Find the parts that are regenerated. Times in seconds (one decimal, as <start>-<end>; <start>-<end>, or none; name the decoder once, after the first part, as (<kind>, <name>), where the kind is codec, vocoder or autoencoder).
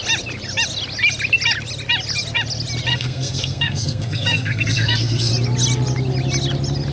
2.9-5.3 (codec, SNAC)